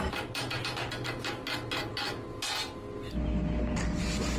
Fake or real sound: real